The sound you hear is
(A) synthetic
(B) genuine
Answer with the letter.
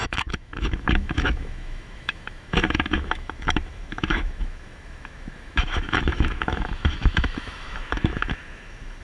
A